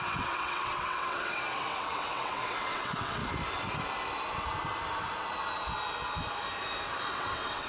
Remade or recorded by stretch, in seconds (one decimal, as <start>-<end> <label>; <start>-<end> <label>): 0.0-3.2 remade; 3.2-7.0 recorded; 7.0-7.7 remade